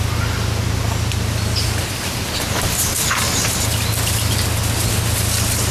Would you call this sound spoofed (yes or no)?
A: no